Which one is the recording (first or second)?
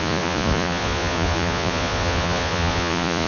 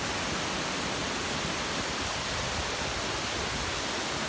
second